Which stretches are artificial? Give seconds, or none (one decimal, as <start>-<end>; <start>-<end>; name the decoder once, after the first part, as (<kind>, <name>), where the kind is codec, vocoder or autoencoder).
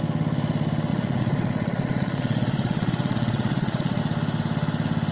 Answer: 0.9-4.0 (vocoder, Vocos)